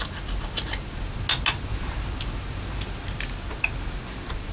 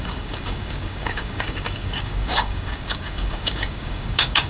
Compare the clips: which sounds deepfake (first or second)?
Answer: second